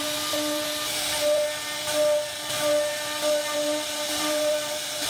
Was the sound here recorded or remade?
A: remade